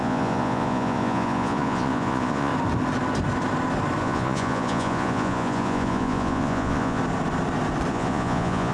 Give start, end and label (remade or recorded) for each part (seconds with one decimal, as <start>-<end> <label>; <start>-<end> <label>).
0.0-2.5 remade; 2.5-4.0 recorded; 4.0-7.0 remade; 7.0-7.9 recorded; 7.9-8.7 remade